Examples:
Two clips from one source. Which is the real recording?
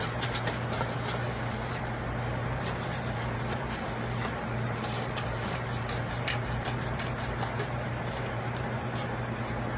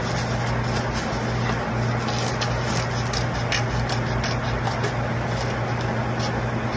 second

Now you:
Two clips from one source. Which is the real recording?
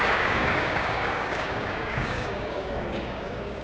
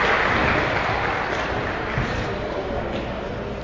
second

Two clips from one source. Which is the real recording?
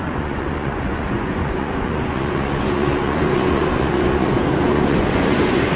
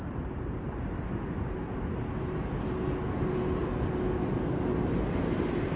second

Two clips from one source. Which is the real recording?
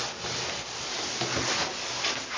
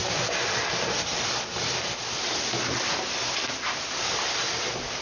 first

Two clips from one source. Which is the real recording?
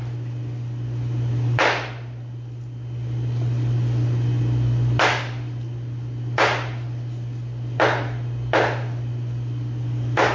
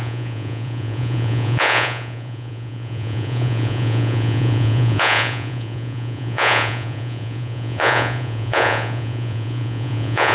first